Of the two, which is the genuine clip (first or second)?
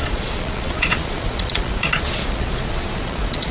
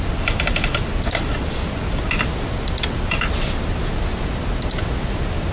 second